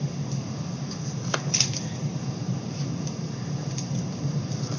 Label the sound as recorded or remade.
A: recorded